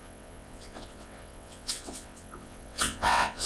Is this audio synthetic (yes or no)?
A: yes